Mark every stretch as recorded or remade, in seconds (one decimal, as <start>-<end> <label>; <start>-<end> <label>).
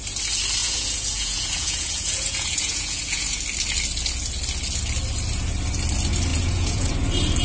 0.0-0.6 recorded; 0.6-3.4 remade; 3.4-6.3 recorded; 6.3-6.9 remade; 6.9-7.4 recorded